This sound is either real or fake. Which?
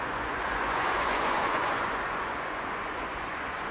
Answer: fake